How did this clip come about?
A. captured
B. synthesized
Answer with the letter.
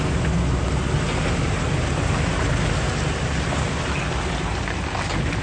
A